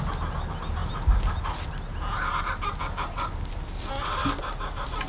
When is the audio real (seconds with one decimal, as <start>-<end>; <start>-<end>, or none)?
0.0-5.1